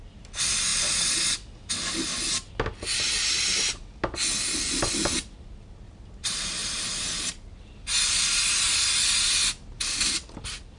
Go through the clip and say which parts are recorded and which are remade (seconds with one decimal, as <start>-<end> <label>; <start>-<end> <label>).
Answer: 0.0-10.8 recorded